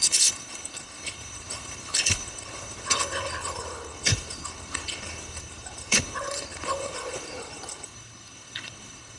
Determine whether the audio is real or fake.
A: fake